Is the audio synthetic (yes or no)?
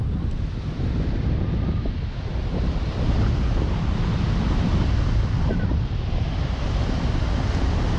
no